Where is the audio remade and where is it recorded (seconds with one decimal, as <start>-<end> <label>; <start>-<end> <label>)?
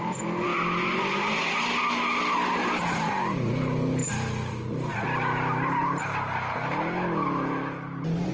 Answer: 0.0-8.3 recorded